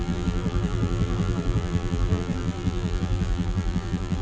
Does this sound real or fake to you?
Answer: fake